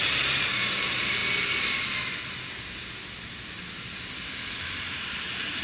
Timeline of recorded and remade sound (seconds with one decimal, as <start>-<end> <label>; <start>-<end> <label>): 0.0-1.2 remade; 1.2-4.6 recorded; 4.6-5.6 remade